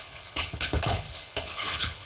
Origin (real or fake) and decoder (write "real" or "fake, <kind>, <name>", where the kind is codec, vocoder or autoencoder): fake, codec, HILCodec